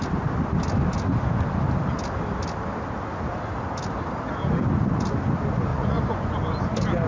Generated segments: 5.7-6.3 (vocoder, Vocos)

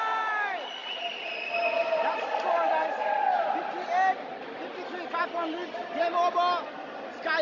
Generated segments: none

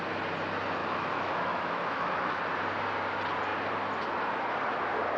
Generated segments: 0.8-2.4 (autoencoder, DAC-VAE)

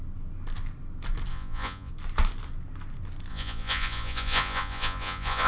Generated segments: 1.3-1.9 (vocoder, Vocos); 3.3-5.5

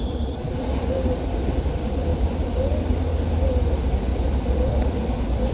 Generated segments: none